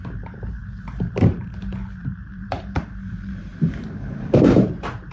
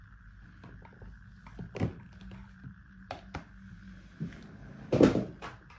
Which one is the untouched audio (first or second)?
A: second